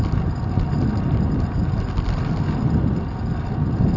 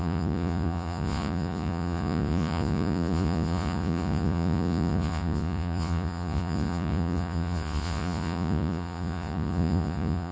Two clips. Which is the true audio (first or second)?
first